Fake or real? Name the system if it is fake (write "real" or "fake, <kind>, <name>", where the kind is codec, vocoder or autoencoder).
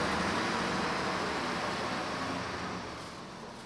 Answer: real